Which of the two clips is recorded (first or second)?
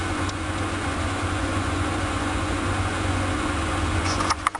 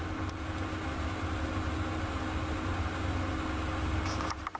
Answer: second